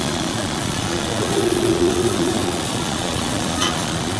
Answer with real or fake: fake